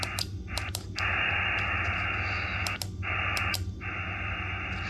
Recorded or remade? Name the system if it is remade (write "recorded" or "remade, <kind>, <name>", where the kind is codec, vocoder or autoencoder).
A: recorded